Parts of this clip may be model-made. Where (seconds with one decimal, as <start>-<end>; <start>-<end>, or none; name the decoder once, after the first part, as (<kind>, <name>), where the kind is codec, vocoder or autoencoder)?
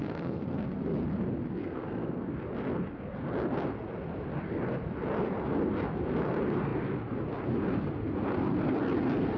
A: 0.0-0.6 (codec, SNAC); 1.6-2.2